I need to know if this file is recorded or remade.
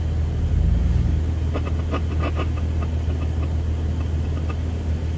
recorded